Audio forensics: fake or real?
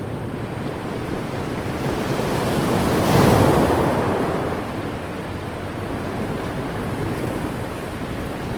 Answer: real